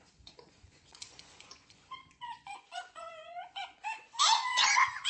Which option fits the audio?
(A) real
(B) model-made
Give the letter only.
B